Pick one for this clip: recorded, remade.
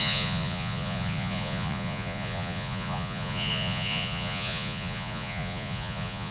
remade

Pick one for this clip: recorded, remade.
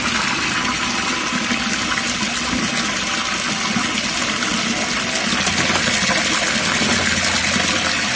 recorded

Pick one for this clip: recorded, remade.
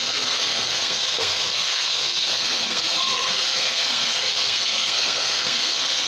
remade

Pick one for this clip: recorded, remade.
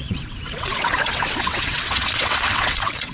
remade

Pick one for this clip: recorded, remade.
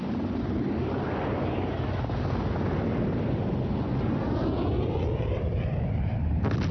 recorded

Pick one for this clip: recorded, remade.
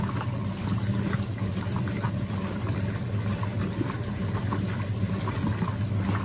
recorded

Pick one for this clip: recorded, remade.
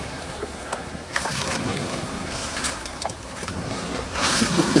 remade